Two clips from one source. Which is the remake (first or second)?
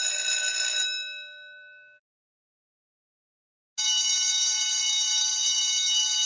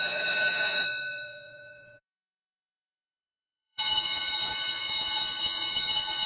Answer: second